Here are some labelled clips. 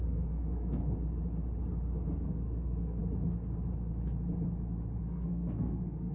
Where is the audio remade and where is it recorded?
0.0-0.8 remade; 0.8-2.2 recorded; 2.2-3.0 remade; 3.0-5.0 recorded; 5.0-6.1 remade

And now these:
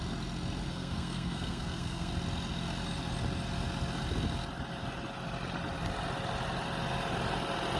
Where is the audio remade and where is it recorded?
0.0-0.7 recorded; 0.7-2.1 remade; 2.1-7.8 recorded